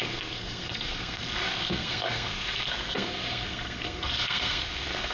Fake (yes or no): yes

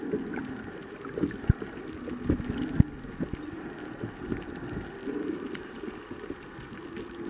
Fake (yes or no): no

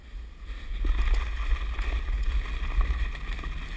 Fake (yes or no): no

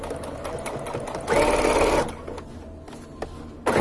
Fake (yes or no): no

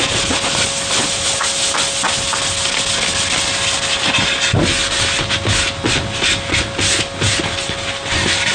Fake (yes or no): no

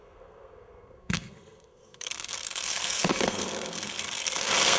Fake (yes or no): yes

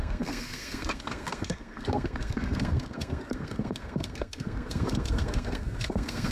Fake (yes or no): yes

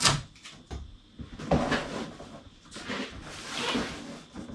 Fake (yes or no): no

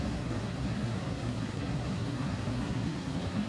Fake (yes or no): yes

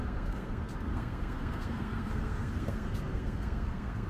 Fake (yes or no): yes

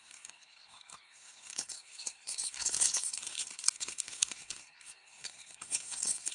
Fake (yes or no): yes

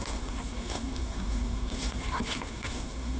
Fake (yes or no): yes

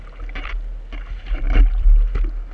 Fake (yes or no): no